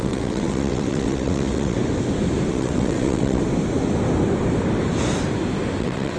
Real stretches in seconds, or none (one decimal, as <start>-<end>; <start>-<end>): 1.8-2.5; 3.4-5.8